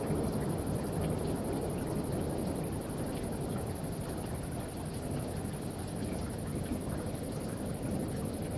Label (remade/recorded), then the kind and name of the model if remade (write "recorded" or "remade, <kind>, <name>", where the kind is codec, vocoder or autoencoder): recorded